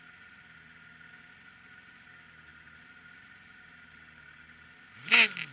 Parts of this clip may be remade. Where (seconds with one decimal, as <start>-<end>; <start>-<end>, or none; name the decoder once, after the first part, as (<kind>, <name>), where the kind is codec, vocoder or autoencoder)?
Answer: none